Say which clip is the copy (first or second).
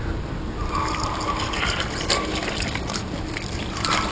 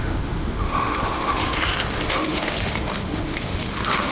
second